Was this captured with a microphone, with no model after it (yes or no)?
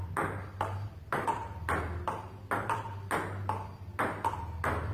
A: yes